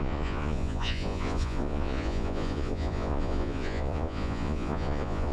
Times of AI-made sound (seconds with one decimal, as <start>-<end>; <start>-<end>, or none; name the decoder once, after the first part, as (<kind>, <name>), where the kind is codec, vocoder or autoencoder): 0.0-5.3 (vocoder, Vocos)